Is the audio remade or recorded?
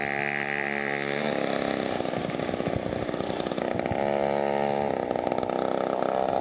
recorded